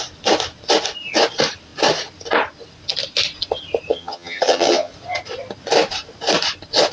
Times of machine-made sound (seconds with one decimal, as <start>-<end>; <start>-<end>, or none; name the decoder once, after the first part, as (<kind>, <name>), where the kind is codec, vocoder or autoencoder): 3.9-4.9 (vocoder, HiFi-GAN)